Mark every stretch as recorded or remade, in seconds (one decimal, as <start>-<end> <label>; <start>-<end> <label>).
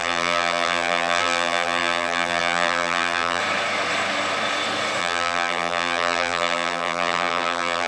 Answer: 0.0-3.4 remade; 3.4-5.0 recorded; 5.0-7.9 remade